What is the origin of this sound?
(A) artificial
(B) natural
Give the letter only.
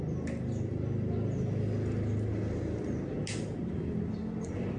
B